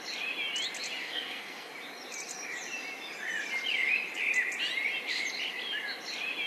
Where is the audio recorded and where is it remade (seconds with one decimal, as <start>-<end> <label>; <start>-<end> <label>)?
0.0-1.0 recorded; 1.0-1.7 remade; 1.7-6.5 recorded